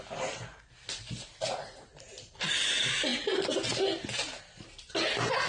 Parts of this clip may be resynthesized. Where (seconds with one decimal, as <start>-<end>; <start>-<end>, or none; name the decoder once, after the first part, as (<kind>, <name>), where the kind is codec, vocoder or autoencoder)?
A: none